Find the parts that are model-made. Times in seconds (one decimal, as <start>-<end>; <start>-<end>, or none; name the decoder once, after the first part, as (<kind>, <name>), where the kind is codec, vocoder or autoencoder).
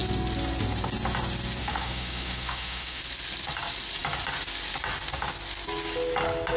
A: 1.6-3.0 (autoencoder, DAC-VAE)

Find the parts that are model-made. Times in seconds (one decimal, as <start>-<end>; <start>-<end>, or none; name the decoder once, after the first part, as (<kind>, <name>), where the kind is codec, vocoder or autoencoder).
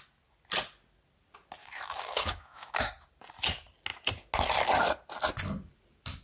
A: 1.6-2.9 (autoencoder, DAC-VAE)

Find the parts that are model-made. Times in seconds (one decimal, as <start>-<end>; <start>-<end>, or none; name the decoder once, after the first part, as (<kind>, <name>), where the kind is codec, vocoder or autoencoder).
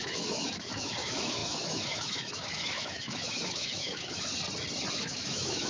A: 0.0-4.3 (autoencoder, DAC-VAE); 4.9-5.7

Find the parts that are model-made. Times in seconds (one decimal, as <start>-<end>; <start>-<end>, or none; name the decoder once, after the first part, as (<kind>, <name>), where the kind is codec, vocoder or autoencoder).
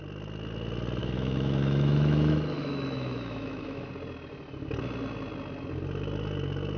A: 1.0-3.9 (autoencoder, DAC-VAE)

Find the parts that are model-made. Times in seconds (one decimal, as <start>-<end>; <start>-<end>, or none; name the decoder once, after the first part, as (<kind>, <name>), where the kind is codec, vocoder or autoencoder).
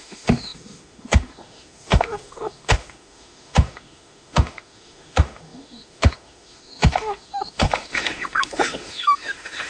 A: 0.0-9.7 (autoencoder, DAC-VAE)